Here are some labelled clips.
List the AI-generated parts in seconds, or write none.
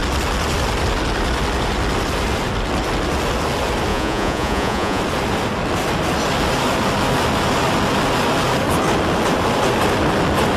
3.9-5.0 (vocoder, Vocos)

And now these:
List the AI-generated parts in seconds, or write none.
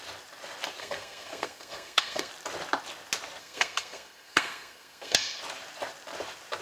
0.8-2.3 (codec, SNAC); 3.4-5.4